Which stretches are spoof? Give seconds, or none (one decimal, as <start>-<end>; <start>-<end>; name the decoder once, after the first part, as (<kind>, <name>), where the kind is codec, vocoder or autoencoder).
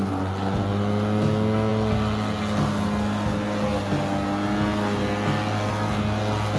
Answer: none